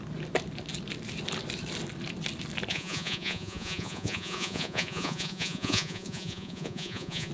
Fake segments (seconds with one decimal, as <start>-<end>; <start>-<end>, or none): 2.7-7.3